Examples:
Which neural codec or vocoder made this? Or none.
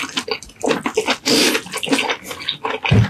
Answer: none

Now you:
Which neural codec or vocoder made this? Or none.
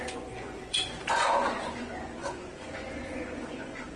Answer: vocoder, Vocos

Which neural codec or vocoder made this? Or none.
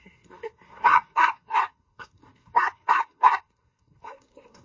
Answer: codec, SNAC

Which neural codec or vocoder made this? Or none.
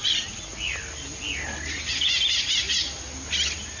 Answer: none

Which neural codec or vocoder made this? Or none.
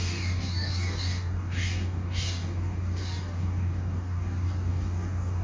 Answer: codec, DAC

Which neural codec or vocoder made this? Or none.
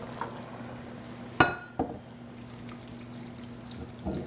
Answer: none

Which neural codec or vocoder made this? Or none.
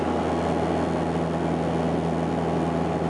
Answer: none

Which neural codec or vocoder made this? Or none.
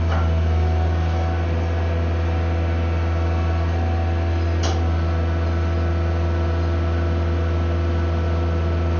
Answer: none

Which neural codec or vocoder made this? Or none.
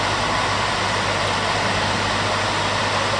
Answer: none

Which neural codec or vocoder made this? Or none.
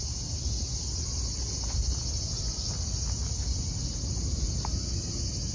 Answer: none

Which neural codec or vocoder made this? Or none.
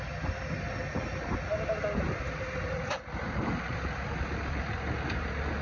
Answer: none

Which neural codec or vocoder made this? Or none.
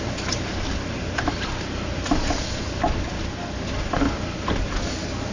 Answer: none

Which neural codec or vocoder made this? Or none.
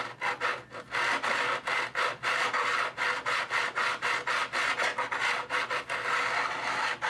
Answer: none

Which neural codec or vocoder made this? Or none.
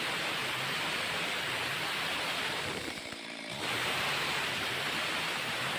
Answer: vocoder, BigVGAN v2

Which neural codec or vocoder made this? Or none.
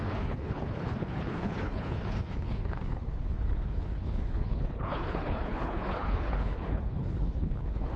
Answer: codec, HILCodec